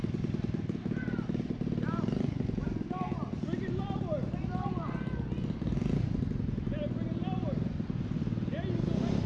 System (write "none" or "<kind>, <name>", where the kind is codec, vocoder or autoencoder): none